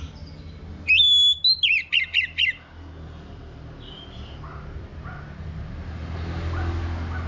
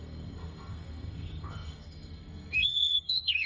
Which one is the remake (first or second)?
second